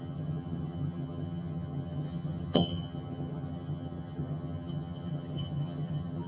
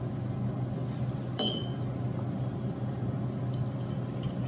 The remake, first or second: first